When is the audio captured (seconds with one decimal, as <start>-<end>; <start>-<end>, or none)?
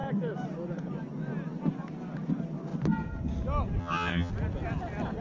0.0-3.8; 4.3-5.2